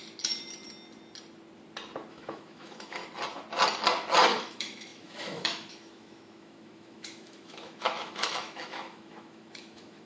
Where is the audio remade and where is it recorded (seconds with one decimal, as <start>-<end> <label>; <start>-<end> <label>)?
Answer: 0.0-2.1 recorded; 2.1-3.0 remade; 3.0-4.4 recorded; 4.4-10.1 remade